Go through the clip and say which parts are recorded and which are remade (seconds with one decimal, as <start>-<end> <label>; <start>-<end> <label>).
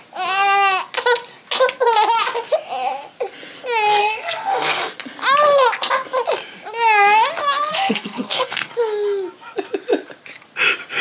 0.0-4.0 recorded; 4.0-4.9 remade; 4.9-7.7 recorded; 7.7-8.7 remade; 8.7-11.0 recorded